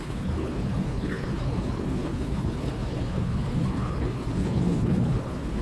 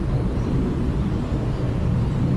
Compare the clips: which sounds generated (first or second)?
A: first